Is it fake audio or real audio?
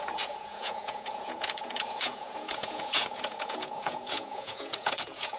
fake